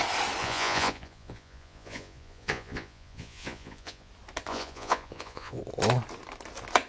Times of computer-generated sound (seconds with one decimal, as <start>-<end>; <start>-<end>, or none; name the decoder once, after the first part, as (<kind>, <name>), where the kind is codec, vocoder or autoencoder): 0.4-4.1 (vocoder, Vocos); 4.5-5.6